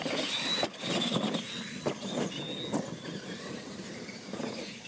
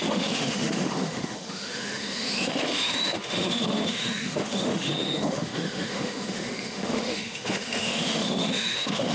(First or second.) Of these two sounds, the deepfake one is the second